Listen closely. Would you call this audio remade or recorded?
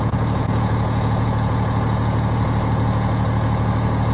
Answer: remade